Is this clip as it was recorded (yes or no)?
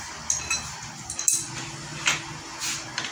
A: yes